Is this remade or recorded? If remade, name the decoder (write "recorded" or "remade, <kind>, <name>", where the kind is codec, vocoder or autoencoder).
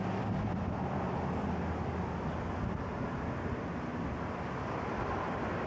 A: recorded